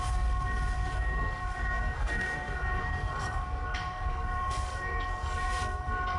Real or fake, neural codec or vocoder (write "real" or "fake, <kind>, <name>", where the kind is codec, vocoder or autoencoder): fake, codec, SNAC